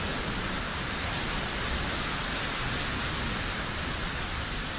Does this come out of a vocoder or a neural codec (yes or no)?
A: no